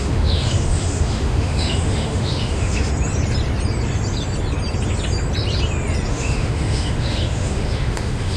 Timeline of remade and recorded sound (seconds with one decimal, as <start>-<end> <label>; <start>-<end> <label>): 0.0-2.9 remade; 2.9-6.1 recorded; 6.1-8.4 remade